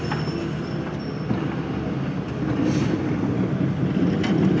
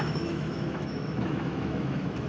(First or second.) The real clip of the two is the first